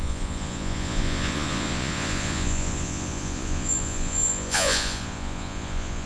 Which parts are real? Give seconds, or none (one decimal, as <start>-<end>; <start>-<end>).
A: none